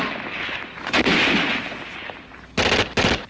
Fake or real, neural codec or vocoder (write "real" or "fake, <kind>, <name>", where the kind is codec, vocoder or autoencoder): real